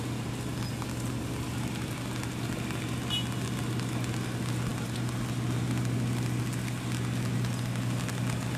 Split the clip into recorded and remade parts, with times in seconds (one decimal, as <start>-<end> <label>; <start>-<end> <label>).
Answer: 0.0-8.6 recorded